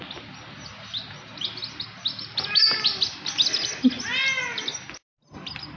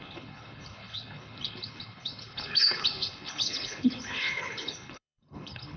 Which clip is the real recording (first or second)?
first